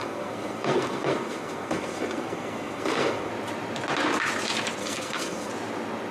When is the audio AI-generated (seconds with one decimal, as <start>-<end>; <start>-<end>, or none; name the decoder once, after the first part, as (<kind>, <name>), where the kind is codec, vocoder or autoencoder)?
0.0-3.3 (codec, SNAC); 4.8-5.5